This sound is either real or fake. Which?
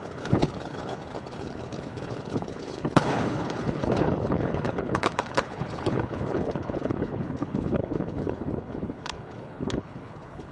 fake